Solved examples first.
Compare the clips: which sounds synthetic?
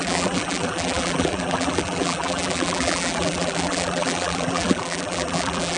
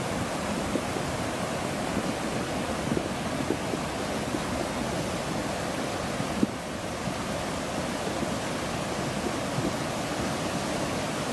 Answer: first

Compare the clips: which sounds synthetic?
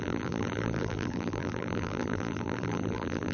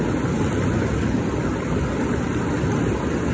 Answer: first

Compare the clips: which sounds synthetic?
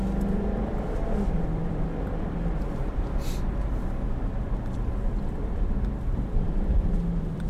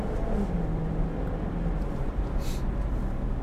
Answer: first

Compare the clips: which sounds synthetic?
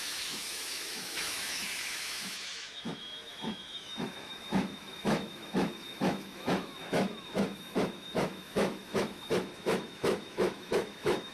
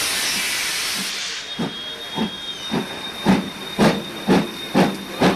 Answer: first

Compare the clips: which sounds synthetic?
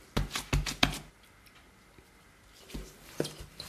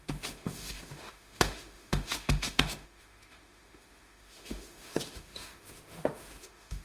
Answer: second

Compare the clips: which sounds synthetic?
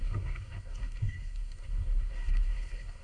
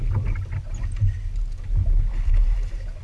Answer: first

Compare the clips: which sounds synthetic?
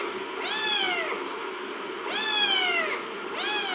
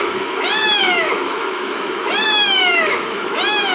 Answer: second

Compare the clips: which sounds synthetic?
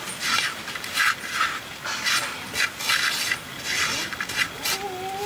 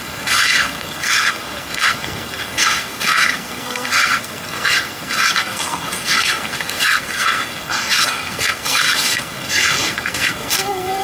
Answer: second